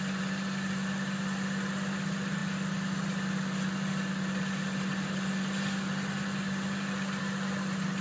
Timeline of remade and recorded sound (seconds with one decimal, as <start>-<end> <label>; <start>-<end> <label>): 0.0-8.0 recorded